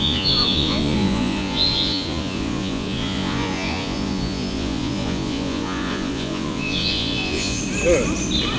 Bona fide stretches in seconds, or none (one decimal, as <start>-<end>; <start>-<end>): 7.6-8.6